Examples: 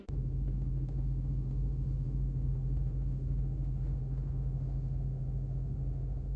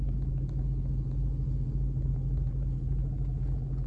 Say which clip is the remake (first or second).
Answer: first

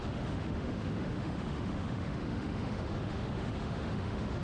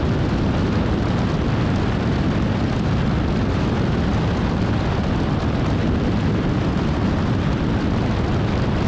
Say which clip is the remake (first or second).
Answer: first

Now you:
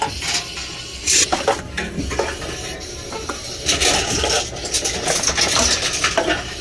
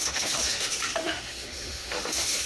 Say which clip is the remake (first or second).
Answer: second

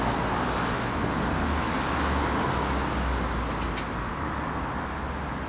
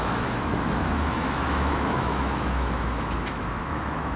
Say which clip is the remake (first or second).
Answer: second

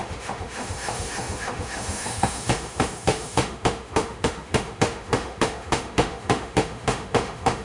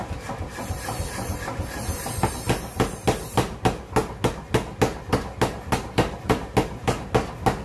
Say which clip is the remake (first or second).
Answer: first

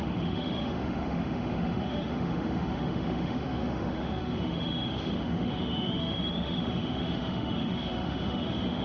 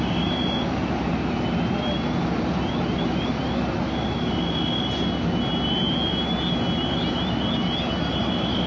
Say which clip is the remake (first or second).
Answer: first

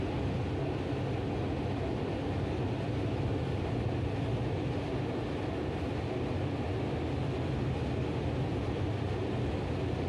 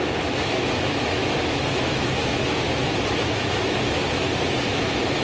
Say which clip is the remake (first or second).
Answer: second